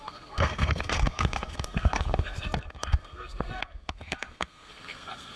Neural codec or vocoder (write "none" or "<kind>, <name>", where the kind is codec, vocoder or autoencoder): codec, SNAC